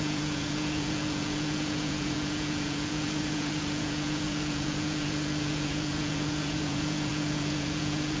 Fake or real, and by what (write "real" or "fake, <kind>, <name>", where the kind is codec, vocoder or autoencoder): fake, vocoder, Vocos